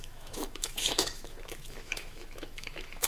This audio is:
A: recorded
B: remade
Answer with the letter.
B